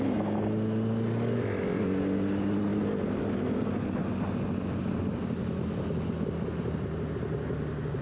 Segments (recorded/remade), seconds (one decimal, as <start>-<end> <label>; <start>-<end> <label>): 0.0-8.0 recorded